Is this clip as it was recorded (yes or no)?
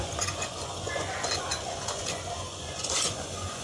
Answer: no